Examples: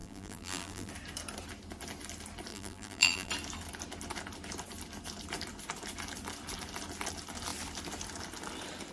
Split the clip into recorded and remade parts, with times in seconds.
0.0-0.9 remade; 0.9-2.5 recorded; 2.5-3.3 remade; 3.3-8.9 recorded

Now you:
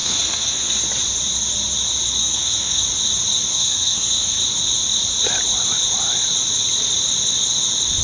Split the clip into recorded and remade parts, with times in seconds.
0.0-0.8 remade; 0.8-2.2 recorded; 2.2-2.8 remade; 2.8-3.5 recorded; 3.5-4.4 remade; 4.4-8.0 recorded

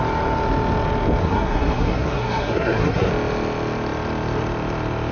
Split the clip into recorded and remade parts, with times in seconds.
0.0-1.2 recorded; 1.2-3.1 remade; 3.1-5.1 recorded

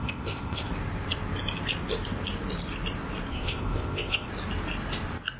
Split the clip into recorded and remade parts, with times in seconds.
0.0-0.7 remade; 0.7-3.3 recorded; 3.3-4.3 remade; 4.3-5.4 recorded